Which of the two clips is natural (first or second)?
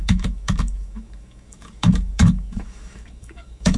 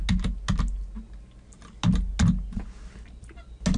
second